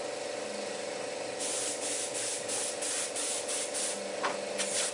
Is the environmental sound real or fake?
real